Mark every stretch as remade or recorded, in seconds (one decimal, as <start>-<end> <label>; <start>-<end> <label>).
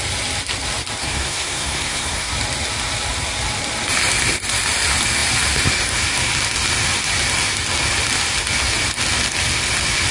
0.0-1.0 recorded; 1.0-2.3 remade; 2.3-10.1 recorded